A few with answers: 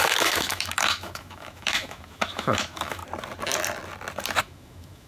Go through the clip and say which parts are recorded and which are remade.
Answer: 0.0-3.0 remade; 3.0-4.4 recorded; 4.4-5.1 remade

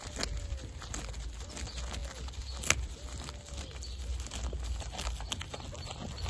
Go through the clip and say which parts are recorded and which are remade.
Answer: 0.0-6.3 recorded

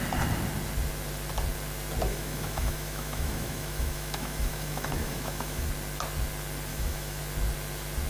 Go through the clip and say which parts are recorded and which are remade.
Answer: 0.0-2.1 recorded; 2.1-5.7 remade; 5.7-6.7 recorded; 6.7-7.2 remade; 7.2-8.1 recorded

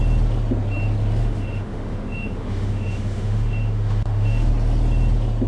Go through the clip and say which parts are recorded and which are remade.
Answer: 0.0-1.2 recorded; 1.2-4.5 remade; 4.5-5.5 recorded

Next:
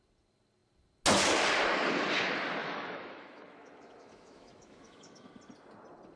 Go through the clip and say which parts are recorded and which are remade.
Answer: 0.0-2.6 recorded; 2.6-5.3 remade; 5.3-6.2 recorded

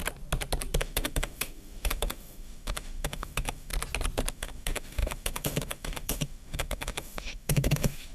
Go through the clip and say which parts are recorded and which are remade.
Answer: 0.0-0.8 recorded; 0.8-3.7 remade; 3.7-4.3 recorded; 4.3-8.1 remade